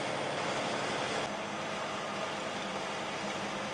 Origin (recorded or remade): recorded